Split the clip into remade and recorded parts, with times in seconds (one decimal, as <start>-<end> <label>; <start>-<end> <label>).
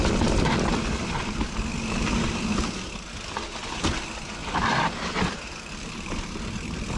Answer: 0.0-7.0 recorded